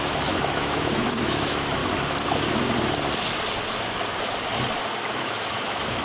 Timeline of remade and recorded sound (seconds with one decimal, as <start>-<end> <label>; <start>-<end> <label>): 0.0-1.8 remade; 1.8-5.1 recorded; 5.1-6.0 remade